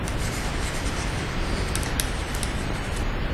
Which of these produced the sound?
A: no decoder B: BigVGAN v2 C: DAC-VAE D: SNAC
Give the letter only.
A